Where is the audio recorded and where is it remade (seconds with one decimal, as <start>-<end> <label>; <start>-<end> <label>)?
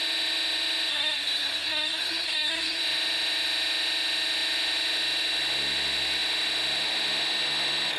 0.0-0.9 recorded; 0.9-2.8 remade; 2.8-8.0 recorded